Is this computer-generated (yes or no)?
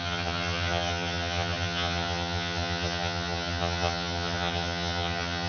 yes